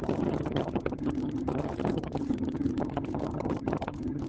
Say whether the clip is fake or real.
fake